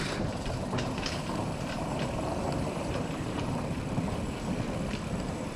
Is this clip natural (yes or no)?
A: no